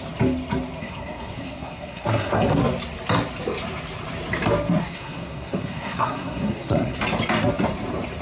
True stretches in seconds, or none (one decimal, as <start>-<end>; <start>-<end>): 0.0-0.8; 2.6-4.8; 7.0-8.2